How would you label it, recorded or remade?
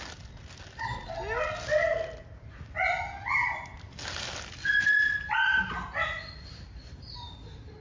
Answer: recorded